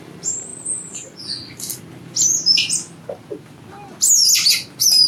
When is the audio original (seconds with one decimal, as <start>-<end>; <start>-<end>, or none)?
0.0-5.1

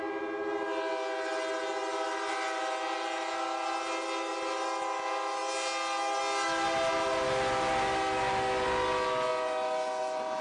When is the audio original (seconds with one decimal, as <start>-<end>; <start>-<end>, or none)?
0.0-10.4